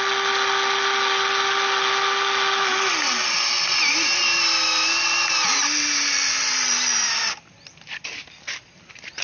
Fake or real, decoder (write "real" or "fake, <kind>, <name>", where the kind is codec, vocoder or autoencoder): real